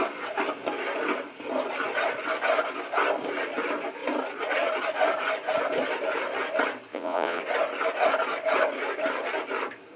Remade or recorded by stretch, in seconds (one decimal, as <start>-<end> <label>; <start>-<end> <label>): 0.0-6.9 recorded; 6.9-7.4 remade; 7.4-10.0 recorded